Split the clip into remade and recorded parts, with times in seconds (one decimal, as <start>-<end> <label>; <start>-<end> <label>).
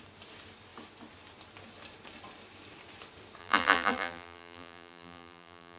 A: 0.0-3.4 recorded; 3.4-5.8 remade